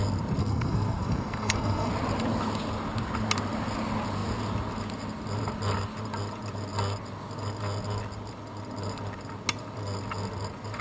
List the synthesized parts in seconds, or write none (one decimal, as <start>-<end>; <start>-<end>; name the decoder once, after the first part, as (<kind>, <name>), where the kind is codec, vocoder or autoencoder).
0.4-1.9 (codec, SNAC)